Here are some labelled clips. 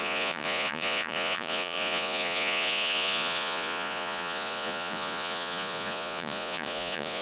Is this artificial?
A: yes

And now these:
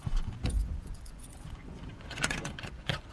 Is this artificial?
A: yes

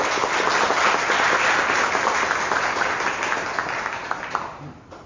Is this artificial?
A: no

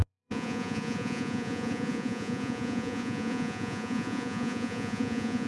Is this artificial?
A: yes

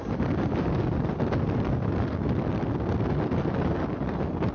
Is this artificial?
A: no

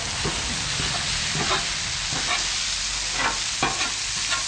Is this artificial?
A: no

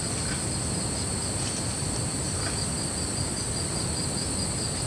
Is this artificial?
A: no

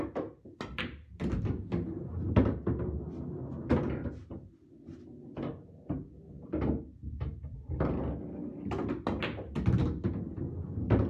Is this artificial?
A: no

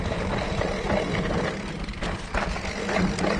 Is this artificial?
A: no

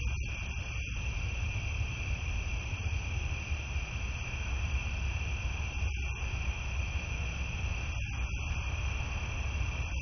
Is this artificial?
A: no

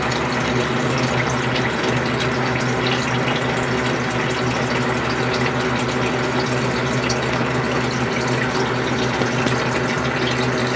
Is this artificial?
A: no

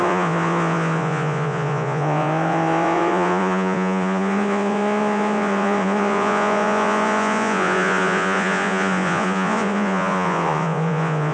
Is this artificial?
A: yes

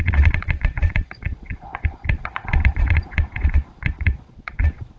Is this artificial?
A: yes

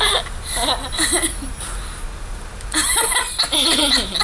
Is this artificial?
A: no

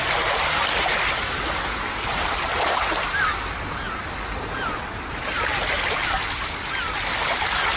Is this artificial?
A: no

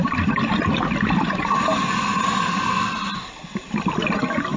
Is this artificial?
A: no